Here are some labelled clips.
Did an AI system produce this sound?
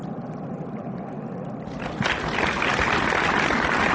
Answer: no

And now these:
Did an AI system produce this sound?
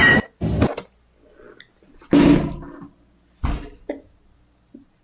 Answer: no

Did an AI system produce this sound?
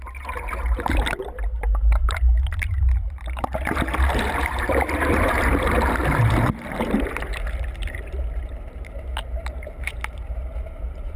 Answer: yes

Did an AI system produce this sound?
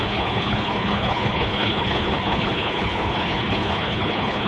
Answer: yes